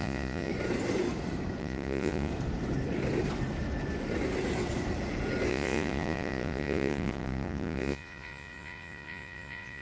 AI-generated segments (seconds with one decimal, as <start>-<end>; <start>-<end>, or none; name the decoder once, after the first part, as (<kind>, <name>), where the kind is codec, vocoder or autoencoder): 0.0-0.5 (vocoder, Vocos); 1.6-2.3; 5.5-9.8